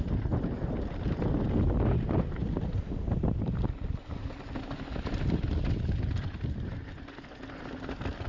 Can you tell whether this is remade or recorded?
recorded